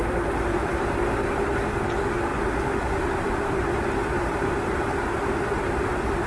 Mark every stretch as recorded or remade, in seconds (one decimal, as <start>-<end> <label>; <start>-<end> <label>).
0.0-0.8 remade; 0.8-2.3 recorded; 2.3-6.3 remade